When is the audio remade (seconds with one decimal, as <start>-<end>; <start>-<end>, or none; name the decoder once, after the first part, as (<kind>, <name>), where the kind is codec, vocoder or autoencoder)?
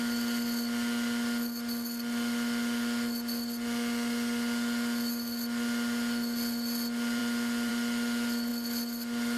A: none